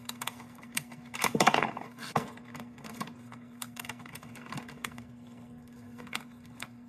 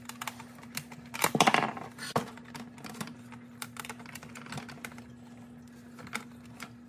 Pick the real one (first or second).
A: second